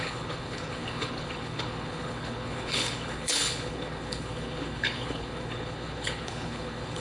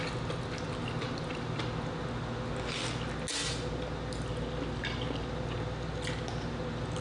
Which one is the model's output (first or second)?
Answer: first